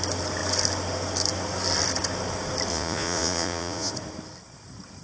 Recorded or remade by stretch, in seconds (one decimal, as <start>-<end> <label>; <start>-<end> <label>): 0.0-2.7 recorded; 2.7-3.9 remade; 3.9-5.0 recorded

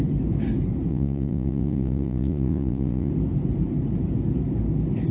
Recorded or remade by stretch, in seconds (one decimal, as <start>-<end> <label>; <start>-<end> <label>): 0.0-0.9 recorded; 0.9-3.1 remade; 3.1-5.1 recorded

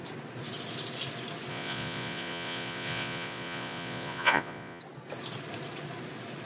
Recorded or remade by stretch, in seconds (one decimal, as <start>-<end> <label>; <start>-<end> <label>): 0.0-1.5 recorded; 1.5-4.8 remade; 4.8-6.5 recorded

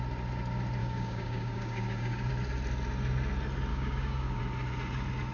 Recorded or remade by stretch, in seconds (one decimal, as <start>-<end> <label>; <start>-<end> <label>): 0.0-0.8 recorded; 0.8-2.3 remade; 2.3-3.7 recorded; 3.7-4.4 remade; 4.4-5.3 recorded